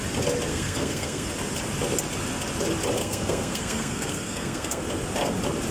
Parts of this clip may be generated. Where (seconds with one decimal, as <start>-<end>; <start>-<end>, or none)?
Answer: 0.5-1.3; 3.0-4.8